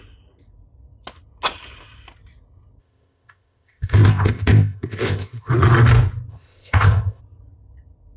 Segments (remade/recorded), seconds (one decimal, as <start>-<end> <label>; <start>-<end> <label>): 0.0-2.8 recorded; 2.8-5.5 remade; 5.5-6.3 recorded; 6.3-7.2 remade; 7.2-8.2 recorded